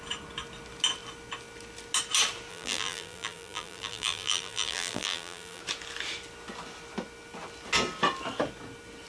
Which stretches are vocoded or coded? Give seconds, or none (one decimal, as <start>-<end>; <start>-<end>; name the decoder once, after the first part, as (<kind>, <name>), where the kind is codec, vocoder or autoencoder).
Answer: 2.5-5.6 (vocoder, BigVGAN v2)